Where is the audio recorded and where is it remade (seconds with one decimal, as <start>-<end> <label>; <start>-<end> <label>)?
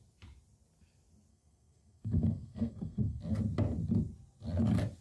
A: 0.0-1.3 recorded; 1.3-3.2 remade; 3.2-5.0 recorded